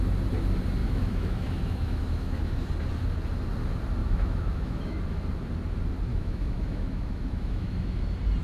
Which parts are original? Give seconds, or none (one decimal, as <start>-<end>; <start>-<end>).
0.0-0.8; 2.7-4.0; 5.0-6.1; 8.0-8.4